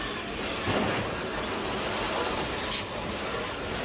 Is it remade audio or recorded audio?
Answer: recorded